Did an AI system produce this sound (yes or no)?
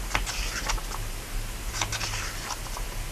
no